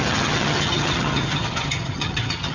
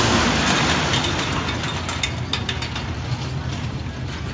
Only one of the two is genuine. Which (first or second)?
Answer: second